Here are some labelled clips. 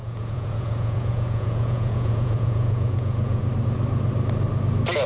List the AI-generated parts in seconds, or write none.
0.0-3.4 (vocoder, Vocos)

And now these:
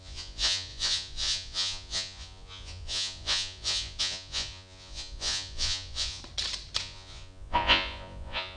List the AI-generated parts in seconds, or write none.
0.0-6.2 (vocoder, Vocos); 6.8-8.6

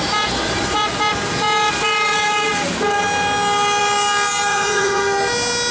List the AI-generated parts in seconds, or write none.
4.5-5.0 (vocoder, Vocos)